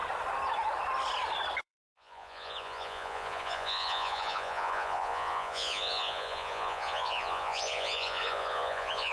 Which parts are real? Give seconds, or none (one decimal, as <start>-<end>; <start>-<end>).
0.0-1.6